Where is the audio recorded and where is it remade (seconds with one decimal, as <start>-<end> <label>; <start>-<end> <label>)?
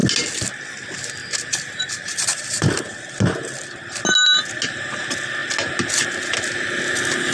0.0-1.2 recorded; 1.2-3.0 remade; 3.0-7.3 recorded